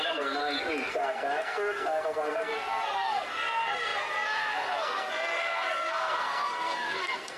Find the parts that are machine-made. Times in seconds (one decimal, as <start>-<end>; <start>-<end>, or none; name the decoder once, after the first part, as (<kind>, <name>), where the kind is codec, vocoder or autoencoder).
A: 0.0-0.4 (codec, SNAC); 0.9-7.4